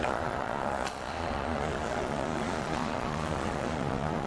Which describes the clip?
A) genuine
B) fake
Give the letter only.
B